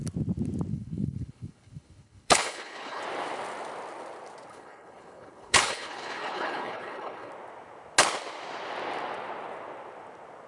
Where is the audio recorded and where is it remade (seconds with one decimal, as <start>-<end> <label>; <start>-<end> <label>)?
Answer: 0.0-0.7 recorded; 0.7-3.0 remade; 3.0-4.5 recorded; 4.5-7.3 remade; 7.3-10.5 recorded

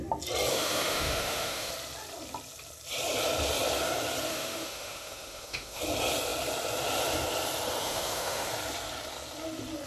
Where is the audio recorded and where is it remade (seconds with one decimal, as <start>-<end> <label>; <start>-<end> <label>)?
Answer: 0.0-0.5 recorded; 0.5-1.7 remade; 1.7-4.3 recorded; 4.3-5.8 remade; 5.8-7.8 recorded; 7.8-8.5 remade; 8.5-9.9 recorded